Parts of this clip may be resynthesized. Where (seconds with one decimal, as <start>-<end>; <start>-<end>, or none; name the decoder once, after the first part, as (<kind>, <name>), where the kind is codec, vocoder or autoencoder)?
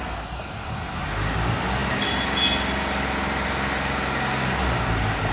none